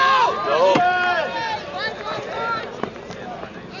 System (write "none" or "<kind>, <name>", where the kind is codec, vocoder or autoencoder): vocoder, BigVGAN v2